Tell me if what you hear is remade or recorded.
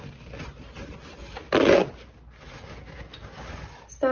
recorded